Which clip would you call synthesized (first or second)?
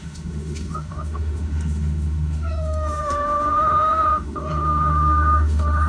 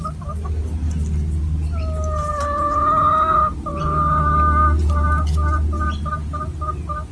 first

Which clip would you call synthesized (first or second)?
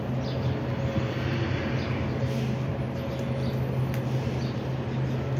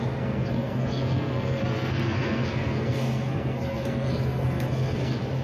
second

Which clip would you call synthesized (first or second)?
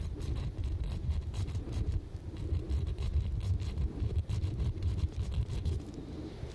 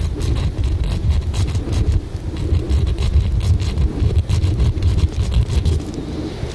first